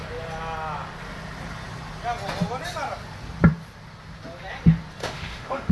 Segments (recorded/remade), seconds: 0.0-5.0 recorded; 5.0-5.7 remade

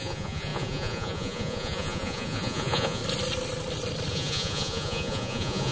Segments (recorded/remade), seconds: 0.0-3.0 remade; 3.0-4.1 recorded; 4.1-5.7 remade

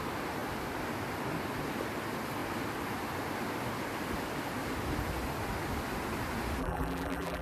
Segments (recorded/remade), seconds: 0.0-6.6 recorded; 6.6-7.4 remade

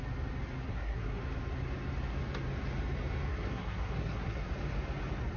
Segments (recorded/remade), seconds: 0.0-0.7 recorded; 0.7-1.2 remade; 1.2-3.3 recorded; 3.3-4.5 remade; 4.5-5.4 recorded

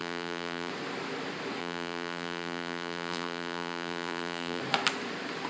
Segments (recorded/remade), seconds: 0.0-0.7 remade; 0.7-1.6 recorded; 1.6-4.6 remade; 4.6-5.5 recorded

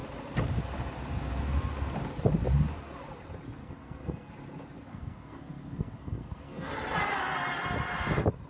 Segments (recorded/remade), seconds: 0.0-3.6 recorded; 3.6-4.3 remade; 4.3-4.9 recorded; 4.9-6.7 remade; 6.7-8.5 recorded